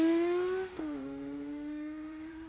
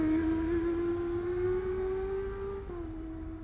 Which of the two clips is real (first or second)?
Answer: second